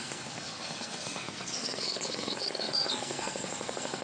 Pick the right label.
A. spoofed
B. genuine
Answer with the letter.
A